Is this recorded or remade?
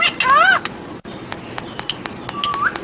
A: recorded